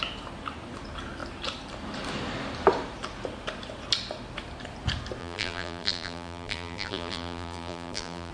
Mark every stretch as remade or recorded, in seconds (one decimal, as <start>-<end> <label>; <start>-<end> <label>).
0.0-5.2 recorded; 5.2-8.3 remade